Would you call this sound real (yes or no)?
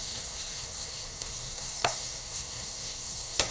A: no